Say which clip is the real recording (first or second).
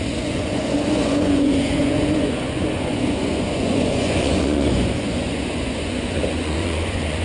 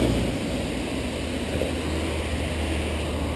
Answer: second